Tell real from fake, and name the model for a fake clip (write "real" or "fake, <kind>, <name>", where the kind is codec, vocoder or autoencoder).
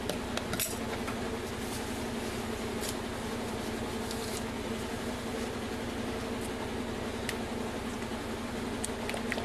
real